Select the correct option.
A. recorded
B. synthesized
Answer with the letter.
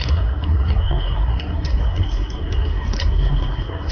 B